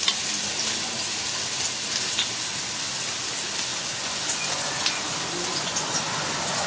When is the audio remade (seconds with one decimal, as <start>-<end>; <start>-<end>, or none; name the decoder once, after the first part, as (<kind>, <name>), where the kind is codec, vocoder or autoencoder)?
3.7-5.0 (vocoder, Vocos); 5.5-6.7